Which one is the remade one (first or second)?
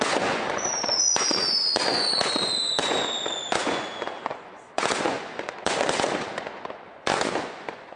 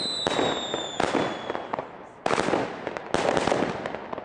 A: first